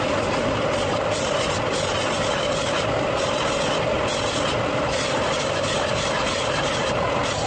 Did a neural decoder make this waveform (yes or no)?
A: no